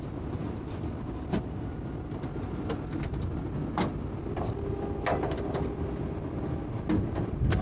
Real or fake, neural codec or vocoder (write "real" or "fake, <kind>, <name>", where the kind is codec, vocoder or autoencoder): real